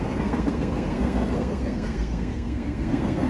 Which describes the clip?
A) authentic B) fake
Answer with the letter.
B